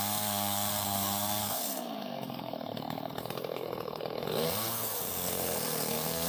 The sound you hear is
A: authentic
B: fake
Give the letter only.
B